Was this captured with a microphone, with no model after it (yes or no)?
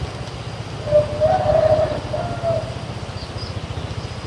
yes